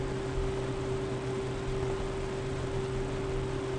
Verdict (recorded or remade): recorded